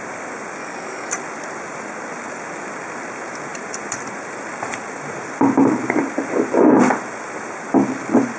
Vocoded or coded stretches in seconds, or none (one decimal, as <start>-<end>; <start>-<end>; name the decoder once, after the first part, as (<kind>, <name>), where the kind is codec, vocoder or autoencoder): 0.6-1.1 (codec, DAC)